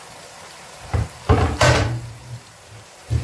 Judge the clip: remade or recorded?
remade